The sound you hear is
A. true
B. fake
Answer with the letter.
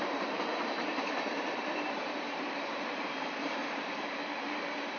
B